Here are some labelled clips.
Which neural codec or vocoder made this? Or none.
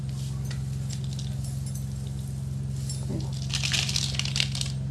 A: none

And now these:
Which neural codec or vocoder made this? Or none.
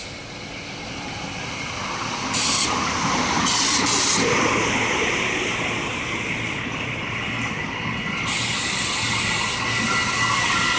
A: none